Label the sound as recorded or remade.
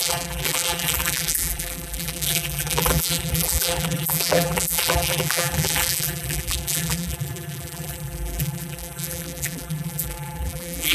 remade